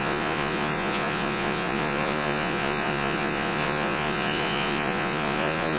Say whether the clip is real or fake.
fake